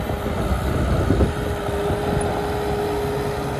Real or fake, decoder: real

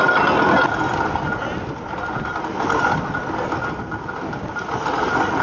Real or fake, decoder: real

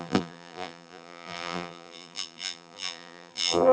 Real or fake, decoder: fake, vocoder, BigVGAN v2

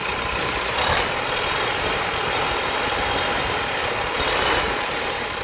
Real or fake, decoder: fake, vocoder, BigVGAN v2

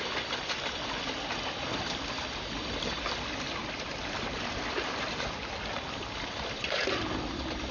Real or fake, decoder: real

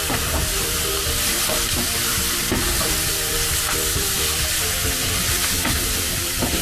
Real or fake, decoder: fake, vocoder, BigVGAN v2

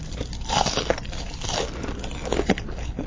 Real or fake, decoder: fake, vocoder, BigVGAN v2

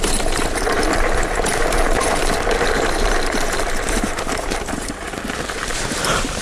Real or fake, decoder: fake, vocoder, BigVGAN v2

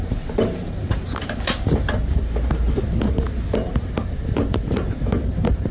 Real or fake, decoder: fake, vocoder, BigVGAN v2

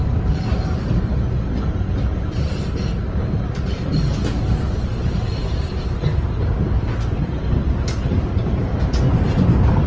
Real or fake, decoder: fake, vocoder, BigVGAN v2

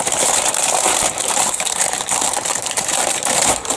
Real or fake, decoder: fake, vocoder, BigVGAN v2